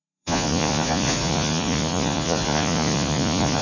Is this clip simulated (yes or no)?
yes